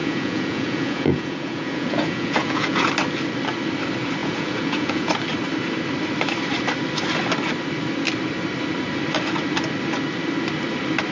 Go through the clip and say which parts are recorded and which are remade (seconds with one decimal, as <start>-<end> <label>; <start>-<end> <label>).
0.0-2.9 remade; 2.9-4.2 recorded; 4.2-5.1 remade; 5.1-11.1 recorded